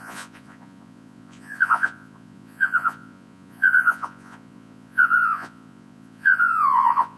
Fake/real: fake